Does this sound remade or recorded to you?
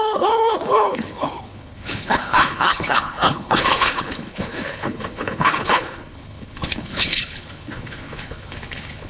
remade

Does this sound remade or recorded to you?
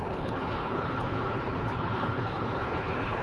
remade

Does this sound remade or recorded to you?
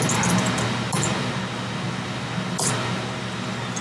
recorded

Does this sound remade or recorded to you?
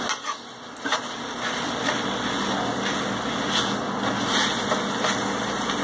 recorded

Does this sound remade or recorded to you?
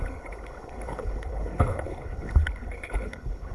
remade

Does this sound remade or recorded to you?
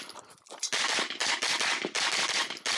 recorded